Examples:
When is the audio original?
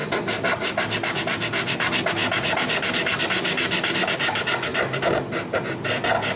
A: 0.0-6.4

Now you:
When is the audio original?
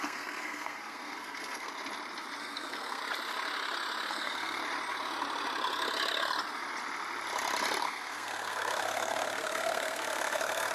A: 1.7-2.4; 3.0-4.1; 4.6-7.8